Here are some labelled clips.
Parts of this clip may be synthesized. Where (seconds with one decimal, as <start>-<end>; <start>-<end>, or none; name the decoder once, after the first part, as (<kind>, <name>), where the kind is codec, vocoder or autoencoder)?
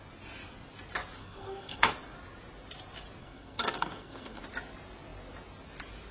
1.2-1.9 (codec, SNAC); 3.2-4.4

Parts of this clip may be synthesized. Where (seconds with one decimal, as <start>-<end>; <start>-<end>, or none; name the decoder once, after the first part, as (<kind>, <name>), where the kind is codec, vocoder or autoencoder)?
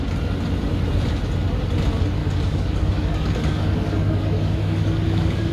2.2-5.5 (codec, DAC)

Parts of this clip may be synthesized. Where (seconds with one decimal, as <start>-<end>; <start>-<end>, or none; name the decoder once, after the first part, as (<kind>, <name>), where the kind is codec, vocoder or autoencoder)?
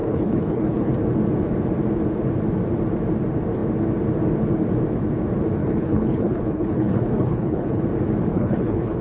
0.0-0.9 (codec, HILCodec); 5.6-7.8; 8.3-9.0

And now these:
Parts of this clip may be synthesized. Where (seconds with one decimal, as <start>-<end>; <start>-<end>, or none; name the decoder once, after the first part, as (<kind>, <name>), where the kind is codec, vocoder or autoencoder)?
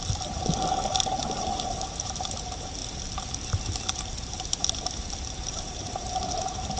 0.0-0.4 (vocoder, BigVGAN v2); 1.2-2.8; 3.9-6.8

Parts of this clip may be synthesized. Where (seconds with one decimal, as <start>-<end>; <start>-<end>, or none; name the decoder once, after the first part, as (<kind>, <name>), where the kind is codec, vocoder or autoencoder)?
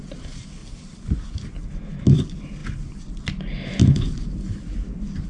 none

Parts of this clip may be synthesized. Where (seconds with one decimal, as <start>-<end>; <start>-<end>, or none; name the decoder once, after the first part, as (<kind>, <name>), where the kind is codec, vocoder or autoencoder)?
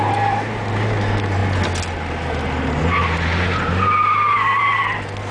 none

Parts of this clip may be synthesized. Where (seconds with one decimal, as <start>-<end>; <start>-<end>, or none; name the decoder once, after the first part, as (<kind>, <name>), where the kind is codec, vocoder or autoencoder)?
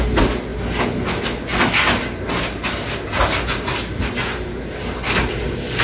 none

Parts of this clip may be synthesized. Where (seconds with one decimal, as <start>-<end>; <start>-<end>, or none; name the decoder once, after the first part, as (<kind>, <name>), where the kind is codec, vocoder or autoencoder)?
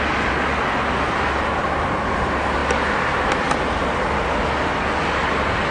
none